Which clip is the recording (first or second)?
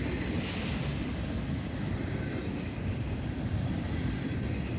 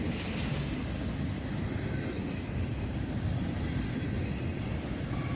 second